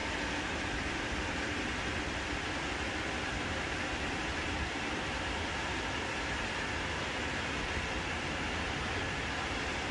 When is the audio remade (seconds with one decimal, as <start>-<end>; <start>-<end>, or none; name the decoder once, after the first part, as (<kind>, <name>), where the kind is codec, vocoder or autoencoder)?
none